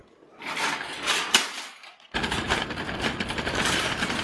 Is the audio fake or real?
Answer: real